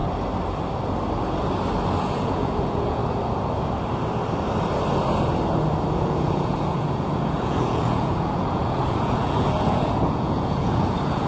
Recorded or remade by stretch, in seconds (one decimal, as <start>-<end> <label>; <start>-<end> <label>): 0.0-2.0 recorded; 2.0-3.0 remade; 3.0-5.9 recorded; 5.9-11.3 remade